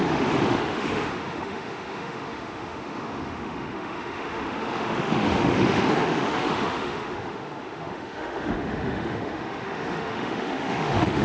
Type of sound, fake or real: fake